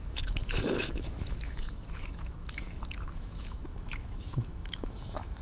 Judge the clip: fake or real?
fake